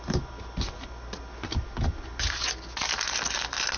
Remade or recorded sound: recorded